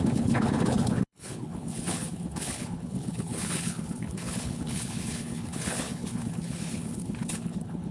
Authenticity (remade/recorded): remade